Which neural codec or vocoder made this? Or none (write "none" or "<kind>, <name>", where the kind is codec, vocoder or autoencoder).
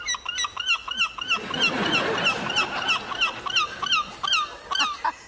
none